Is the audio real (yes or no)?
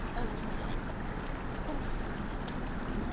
no